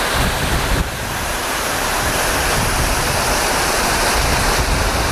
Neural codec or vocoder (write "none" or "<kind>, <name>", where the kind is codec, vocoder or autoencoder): none